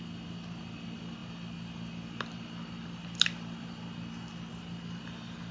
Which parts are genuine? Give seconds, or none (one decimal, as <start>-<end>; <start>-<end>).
0.0-5.5